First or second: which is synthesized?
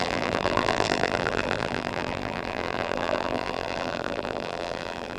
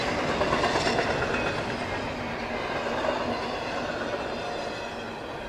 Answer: first